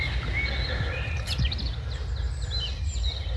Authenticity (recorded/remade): recorded